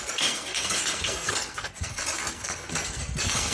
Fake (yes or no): yes